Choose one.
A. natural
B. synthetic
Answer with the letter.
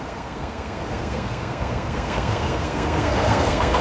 B